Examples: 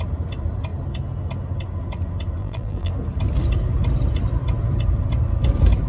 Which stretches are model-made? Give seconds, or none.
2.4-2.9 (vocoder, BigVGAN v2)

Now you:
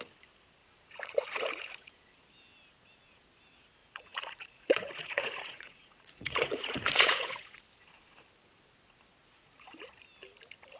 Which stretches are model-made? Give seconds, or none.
0.6-1.9 (vocoder, Vocos); 3.8-7.6; 9.2-10.0

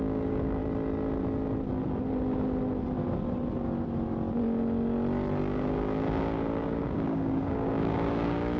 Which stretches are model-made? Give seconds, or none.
0.0-0.6 (codec, DAC); 5.4-8.6

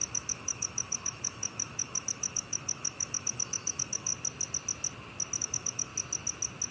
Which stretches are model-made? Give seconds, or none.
0.0-4.1 (autoencoder, DAC-VAE); 5.4-5.9